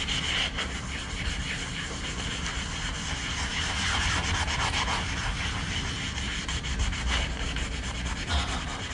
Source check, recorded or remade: recorded